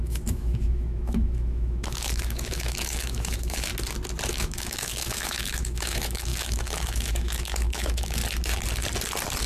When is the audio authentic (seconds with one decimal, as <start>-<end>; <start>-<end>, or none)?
3.7-4.3; 8.2-9.5